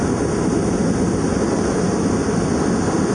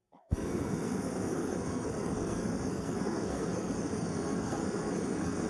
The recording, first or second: first